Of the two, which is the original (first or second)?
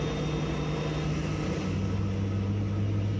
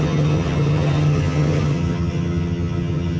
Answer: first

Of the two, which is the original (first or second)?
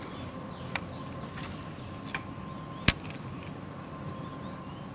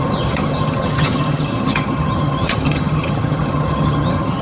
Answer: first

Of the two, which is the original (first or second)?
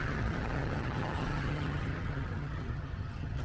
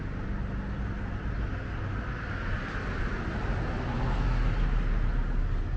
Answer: second